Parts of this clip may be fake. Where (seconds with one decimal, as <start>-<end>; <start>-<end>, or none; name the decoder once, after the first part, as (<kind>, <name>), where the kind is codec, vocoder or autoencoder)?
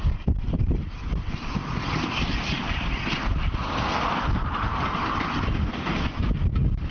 none